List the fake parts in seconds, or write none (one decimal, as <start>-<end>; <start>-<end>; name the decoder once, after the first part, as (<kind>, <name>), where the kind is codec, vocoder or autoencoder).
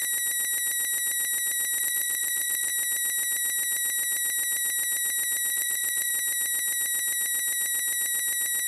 1.8-2.7 (vocoder, Vocos); 5.5-6.1